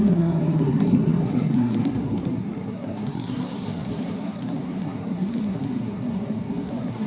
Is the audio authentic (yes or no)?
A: no